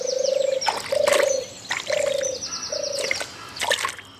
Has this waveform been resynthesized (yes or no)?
no